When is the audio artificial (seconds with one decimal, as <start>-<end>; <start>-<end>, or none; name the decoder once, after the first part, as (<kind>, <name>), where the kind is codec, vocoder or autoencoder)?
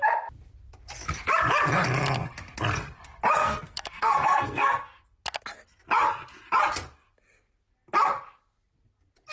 3.4-5.0 (codec, SNAC)